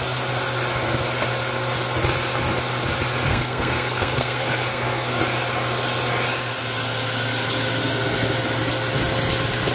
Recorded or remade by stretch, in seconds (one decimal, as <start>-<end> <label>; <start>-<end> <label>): 0.0-3.3 recorded; 3.3-5.2 remade; 5.2-9.7 recorded